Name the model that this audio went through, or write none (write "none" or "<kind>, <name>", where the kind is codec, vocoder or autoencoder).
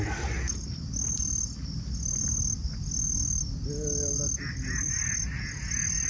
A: none